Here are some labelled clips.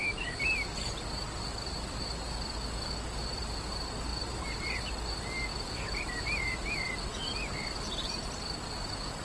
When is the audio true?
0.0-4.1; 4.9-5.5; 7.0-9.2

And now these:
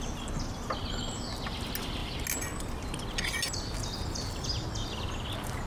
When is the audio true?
0.0-5.7

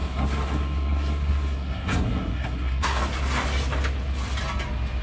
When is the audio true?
3.0-5.0